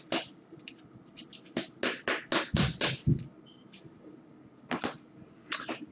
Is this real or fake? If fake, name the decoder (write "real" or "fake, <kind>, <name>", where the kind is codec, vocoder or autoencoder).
real